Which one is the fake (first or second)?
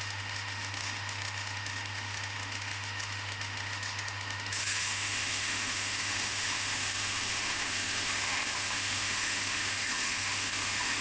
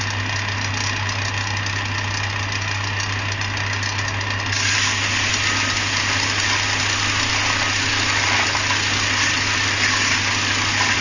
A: first